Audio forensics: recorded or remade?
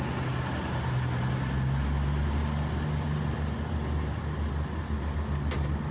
recorded